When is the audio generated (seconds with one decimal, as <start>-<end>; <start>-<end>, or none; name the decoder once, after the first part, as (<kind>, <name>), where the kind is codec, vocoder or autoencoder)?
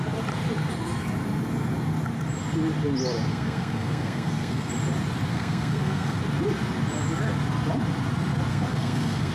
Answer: 3.3-4.7 (codec, SNAC); 5.3-6.2; 8.5-9.3